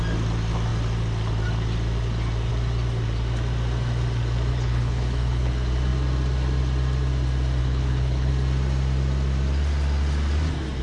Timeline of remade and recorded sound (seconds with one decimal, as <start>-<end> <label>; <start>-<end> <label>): 0.0-4.5 recorded; 4.5-5.5 remade; 5.5-7.6 recorded; 7.6-8.3 remade; 8.3-10.8 recorded